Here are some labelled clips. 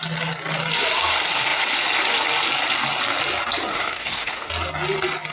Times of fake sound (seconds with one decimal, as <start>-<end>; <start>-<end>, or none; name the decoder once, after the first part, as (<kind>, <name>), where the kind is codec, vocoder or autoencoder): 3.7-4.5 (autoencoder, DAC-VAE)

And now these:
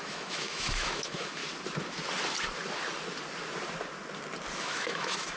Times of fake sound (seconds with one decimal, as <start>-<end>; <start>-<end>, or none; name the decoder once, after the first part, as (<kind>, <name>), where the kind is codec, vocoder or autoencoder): 0.0-1.4 (autoencoder, DAC-VAE); 4.6-5.4

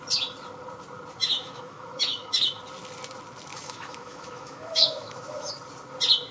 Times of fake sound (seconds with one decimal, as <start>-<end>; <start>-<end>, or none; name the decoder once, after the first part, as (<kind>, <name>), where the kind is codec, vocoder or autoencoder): 1.2-2.6 (autoencoder, DAC-VAE); 3.5-5.5

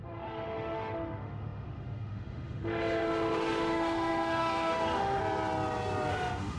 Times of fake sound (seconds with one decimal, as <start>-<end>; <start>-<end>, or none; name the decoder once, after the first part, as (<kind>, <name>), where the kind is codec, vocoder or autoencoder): 0.0-5.2 (autoencoder, DAC-VAE); 6.1-6.6

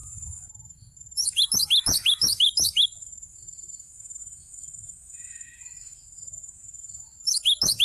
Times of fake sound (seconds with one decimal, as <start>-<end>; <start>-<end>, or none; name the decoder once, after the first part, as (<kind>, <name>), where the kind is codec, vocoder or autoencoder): 0.0-7.8 (autoencoder, DAC-VAE)